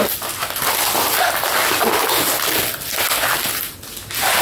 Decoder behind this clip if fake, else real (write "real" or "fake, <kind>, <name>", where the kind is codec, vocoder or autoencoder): real